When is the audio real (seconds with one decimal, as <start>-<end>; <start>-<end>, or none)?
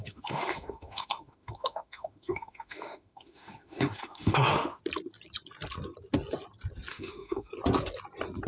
4.8-6.9; 7.5-8.5